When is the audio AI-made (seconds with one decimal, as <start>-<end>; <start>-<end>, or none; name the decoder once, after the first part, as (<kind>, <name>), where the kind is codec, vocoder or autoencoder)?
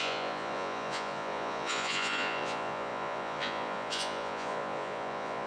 0.0-5.5 (vocoder, Vocos)